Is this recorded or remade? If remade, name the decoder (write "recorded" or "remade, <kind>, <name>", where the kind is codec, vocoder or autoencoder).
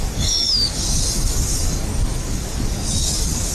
remade, codec, DAC